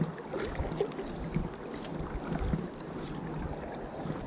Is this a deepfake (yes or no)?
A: no